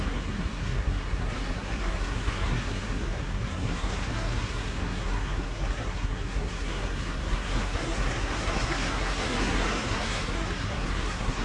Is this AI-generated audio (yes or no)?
yes